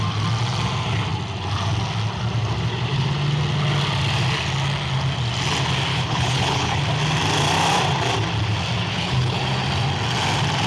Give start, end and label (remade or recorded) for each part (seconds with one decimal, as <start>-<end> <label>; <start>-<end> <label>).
0.0-5.9 recorded; 5.9-6.8 remade; 6.8-8.9 recorded; 8.9-9.4 remade; 9.4-10.7 recorded